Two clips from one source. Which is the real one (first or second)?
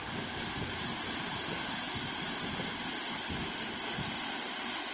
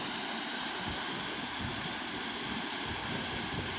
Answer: second